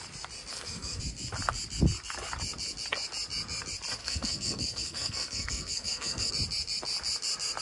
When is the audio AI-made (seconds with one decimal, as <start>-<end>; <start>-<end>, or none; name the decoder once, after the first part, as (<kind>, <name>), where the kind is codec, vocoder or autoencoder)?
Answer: 0.5-1.0 (codec, SNAC); 4.0-6.3